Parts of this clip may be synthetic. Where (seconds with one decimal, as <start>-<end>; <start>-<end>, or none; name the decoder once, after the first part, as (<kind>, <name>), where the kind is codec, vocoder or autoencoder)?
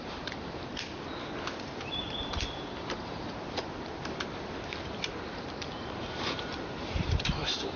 0.0-0.7 (vocoder, BigVGAN v2); 1.9-7.8